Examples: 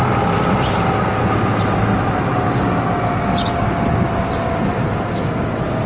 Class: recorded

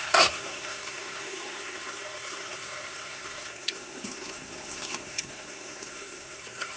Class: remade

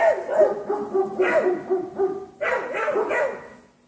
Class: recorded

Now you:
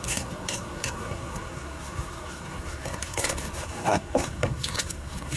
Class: remade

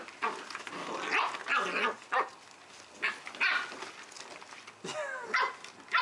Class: recorded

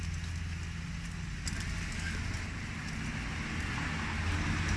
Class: recorded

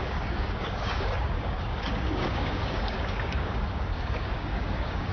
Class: remade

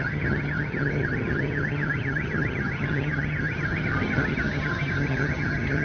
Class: remade